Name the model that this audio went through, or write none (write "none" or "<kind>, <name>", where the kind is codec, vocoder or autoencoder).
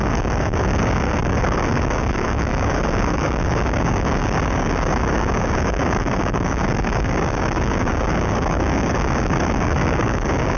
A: codec, DAC